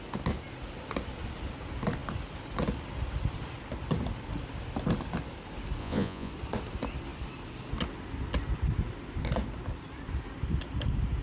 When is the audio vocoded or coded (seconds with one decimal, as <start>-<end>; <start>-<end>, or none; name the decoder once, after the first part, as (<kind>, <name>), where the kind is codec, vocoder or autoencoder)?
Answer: 5.8-6.3 (vocoder, Vocos)